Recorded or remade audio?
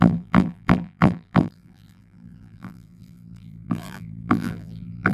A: remade